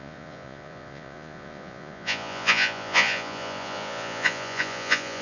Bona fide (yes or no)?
no